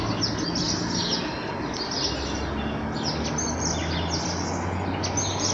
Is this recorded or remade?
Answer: recorded